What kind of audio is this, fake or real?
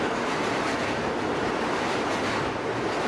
real